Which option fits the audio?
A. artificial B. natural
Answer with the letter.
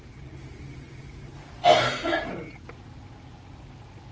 B